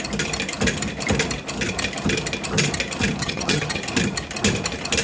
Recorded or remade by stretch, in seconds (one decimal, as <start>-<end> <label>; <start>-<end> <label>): 0.0-3.2 recorded; 3.2-3.8 remade; 3.8-5.0 recorded